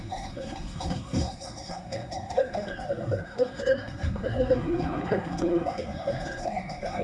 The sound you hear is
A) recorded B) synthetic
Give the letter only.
B